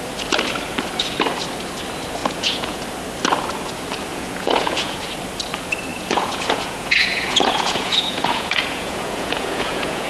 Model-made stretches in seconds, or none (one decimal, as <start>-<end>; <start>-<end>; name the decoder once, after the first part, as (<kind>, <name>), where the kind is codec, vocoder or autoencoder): 2.2-2.8 (vocoder, Vocos); 4.1-5.0; 5.9-10.1